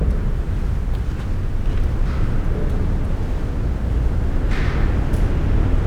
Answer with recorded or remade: recorded